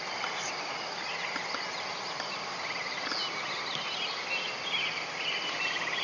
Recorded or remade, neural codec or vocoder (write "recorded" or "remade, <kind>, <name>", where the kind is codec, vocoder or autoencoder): recorded